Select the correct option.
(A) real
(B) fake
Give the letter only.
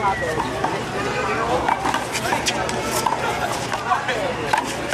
A